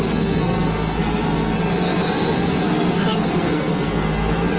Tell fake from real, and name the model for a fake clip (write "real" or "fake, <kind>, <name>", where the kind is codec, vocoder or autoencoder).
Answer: fake, codec, SNAC